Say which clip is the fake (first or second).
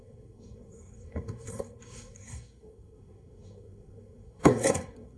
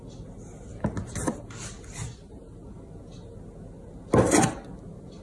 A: first